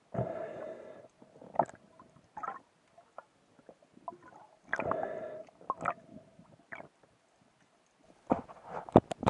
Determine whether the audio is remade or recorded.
recorded